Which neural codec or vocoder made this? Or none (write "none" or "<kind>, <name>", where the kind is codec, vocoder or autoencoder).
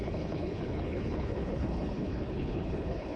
codec, HILCodec